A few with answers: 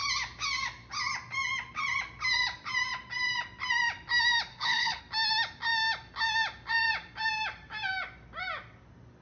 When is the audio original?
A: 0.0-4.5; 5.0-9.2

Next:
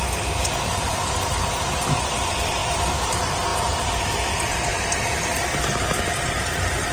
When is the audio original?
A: 4.7-6.2